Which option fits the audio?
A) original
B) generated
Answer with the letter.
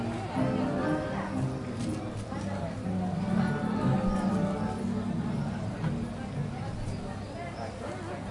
A